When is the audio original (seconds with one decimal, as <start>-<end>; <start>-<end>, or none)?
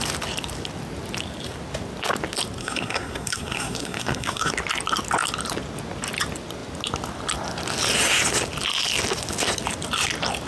0.0-2.6; 4.5-10.5